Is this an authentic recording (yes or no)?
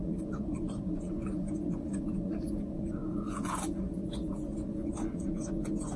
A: no